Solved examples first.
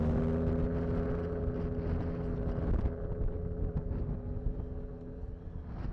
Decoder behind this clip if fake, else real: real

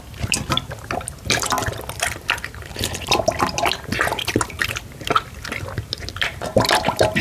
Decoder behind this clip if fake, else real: real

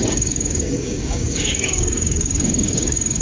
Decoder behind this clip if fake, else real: fake, codec, DAC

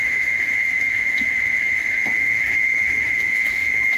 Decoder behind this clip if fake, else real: fake, autoencoder, DAC-VAE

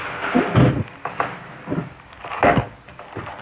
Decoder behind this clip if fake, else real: real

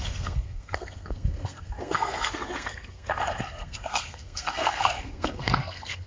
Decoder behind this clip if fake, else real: fake, codec, SNAC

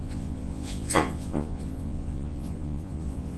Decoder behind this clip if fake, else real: fake, vocoder, Vocos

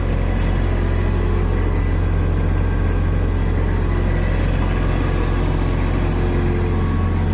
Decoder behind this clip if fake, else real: real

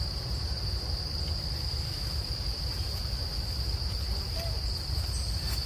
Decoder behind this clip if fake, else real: real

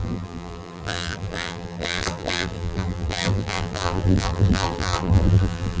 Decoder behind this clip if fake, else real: fake, vocoder, BigVGAN v2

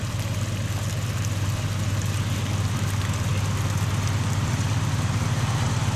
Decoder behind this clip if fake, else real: real